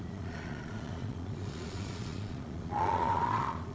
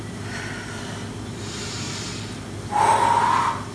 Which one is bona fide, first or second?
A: second